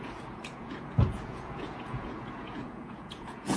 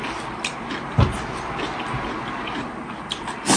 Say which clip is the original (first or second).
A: second